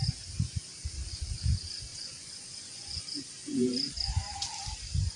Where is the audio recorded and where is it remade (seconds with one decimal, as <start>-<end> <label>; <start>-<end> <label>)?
0.0-1.9 recorded; 1.9-3.0 remade; 3.0-3.4 recorded; 3.4-4.2 remade; 4.2-5.2 recorded